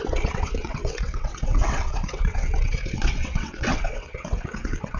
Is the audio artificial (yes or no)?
yes